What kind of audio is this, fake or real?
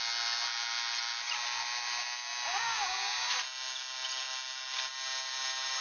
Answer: real